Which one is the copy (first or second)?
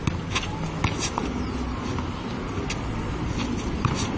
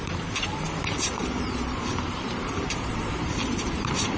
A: second